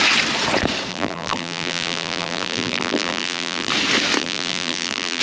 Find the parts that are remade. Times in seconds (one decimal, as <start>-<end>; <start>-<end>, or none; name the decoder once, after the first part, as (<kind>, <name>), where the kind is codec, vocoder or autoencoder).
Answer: 0.9-3.7 (vocoder, BigVGAN v2); 4.2-5.2